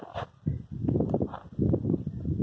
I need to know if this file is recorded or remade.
recorded